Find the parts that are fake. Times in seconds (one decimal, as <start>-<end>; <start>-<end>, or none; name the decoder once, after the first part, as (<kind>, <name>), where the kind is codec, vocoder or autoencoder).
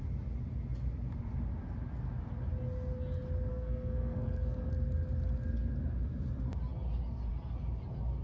3.5-4.7 (codec, SNAC)